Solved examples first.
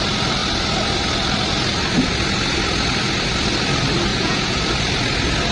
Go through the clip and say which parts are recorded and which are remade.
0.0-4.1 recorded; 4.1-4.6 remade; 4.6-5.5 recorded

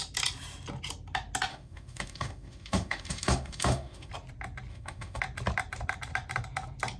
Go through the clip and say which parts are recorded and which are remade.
0.0-1.5 recorded; 1.5-4.1 remade; 4.1-4.7 recorded; 4.7-5.2 remade; 5.2-7.0 recorded

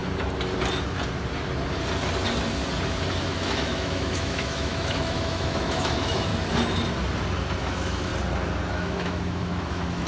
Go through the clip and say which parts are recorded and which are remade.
0.0-3.2 recorded; 3.2-6.3 remade; 6.3-7.6 recorded; 7.6-8.1 remade; 8.1-8.7 recorded; 8.7-10.1 remade

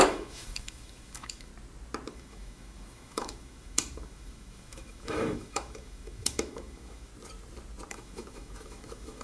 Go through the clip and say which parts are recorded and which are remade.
0.0-1.5 remade; 1.5-2.1 recorded; 2.1-7.1 remade; 7.1-7.9 recorded; 7.9-9.2 remade

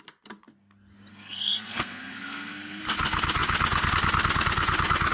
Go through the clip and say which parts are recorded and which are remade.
0.0-1.1 recorded; 1.1-2.8 remade; 2.8-5.1 recorded

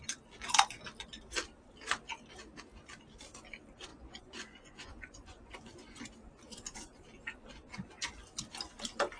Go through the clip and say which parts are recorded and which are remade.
0.0-3.9 recorded; 3.9-6.0 remade; 6.0-9.2 recorded

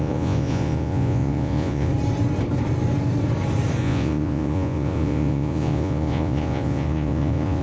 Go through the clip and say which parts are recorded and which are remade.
0.0-1.9 remade; 1.9-3.8 recorded; 3.8-7.6 remade

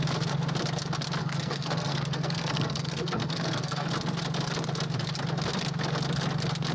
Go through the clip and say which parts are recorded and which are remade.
0.0-1.2 recorded; 1.2-3.9 remade; 3.9-6.7 recorded